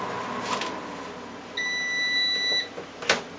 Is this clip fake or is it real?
real